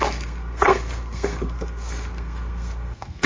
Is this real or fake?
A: fake